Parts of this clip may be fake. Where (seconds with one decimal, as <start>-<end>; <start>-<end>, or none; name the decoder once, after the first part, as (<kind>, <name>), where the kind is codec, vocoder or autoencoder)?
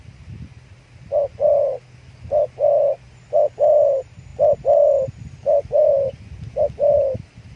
none